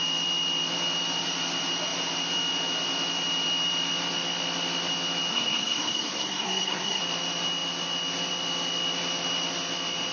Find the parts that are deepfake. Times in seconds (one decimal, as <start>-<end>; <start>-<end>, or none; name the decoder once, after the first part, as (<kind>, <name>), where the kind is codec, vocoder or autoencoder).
5.3-7.0 (codec, SNAC)